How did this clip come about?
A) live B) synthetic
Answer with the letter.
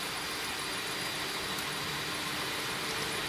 A